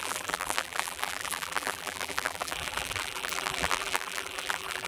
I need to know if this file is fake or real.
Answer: fake